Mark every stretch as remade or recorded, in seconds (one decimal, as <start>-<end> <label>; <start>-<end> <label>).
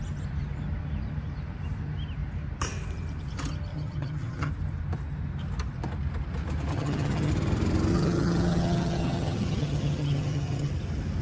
0.0-3.7 recorded; 3.7-4.5 remade; 4.5-6.7 recorded; 6.7-7.3 remade; 7.3-7.9 recorded; 7.9-10.7 remade; 10.7-11.2 recorded